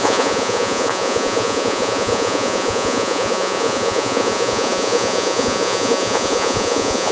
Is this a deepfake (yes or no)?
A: yes